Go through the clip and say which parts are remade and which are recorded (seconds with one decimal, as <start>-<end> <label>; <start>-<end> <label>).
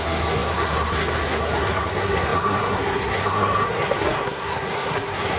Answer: 0.0-5.4 remade